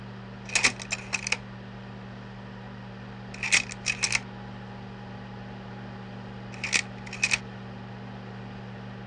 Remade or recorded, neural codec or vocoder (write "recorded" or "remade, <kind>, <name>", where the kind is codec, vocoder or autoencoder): recorded